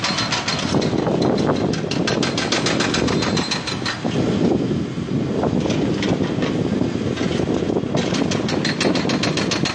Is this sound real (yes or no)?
yes